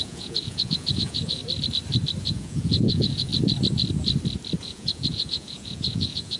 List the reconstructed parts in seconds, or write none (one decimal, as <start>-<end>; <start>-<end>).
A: 0.0-1.4; 2.2-3.3; 4.6-6.4

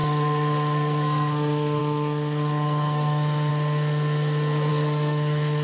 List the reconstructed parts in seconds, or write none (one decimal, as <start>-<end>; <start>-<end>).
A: 0.0-3.5; 4.7-5.6